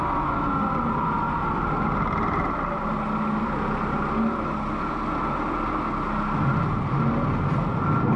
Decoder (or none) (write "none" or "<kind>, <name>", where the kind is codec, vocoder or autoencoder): none